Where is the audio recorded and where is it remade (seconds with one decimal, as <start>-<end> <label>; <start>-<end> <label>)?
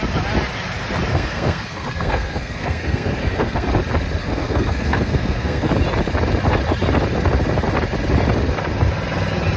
0.0-1.1 recorded; 1.1-3.7 remade; 3.7-4.2 recorded; 4.2-5.7 remade; 5.7-9.6 recorded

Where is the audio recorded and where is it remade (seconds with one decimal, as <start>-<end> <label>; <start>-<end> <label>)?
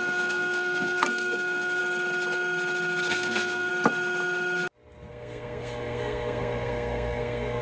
0.0-1.8 remade; 1.8-3.1 recorded; 3.1-3.7 remade; 3.7-5.1 recorded; 5.1-7.6 remade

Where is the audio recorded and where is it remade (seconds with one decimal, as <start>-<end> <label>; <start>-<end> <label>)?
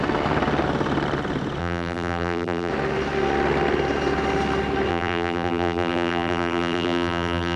0.0-1.6 recorded; 1.6-2.7 remade; 2.7-4.9 recorded; 4.9-7.6 remade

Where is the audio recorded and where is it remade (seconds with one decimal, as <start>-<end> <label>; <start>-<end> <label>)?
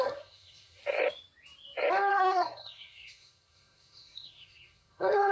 0.0-0.8 remade; 0.8-2.1 recorded; 2.1-5.3 remade